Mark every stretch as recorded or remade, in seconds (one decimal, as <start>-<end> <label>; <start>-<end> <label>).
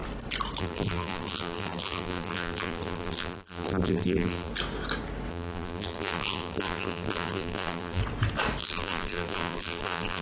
0.0-0.6 recorded; 0.6-4.5 remade; 4.5-5.3 recorded; 5.3-8.0 remade; 8.0-8.6 recorded; 8.6-10.2 remade